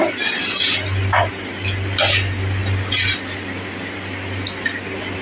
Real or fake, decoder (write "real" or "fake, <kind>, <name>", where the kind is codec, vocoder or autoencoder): real